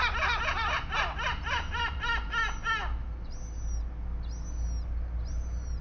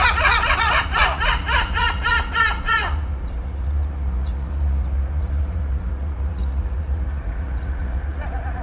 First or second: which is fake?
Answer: second